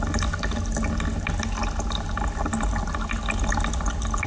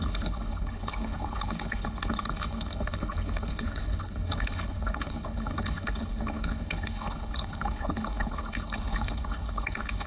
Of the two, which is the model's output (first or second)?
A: second